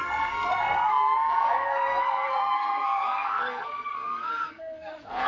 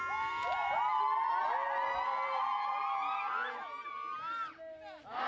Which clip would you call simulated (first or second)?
first